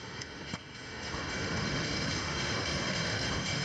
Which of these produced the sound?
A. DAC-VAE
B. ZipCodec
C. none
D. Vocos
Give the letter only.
A